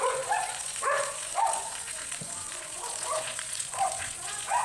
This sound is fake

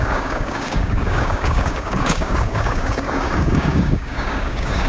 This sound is fake